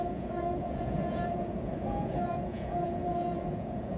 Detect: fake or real fake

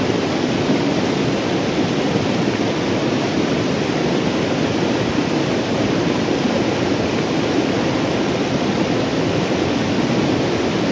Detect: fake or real real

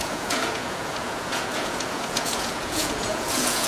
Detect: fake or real fake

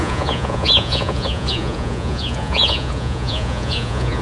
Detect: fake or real fake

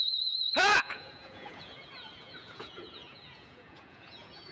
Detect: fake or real fake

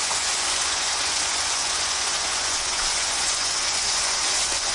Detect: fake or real fake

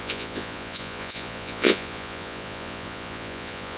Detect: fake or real fake